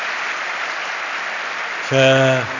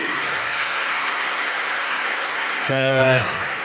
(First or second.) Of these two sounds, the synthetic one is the second